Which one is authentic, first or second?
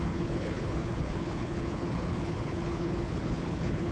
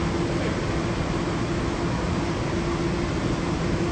second